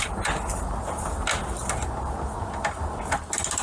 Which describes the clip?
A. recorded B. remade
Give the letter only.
A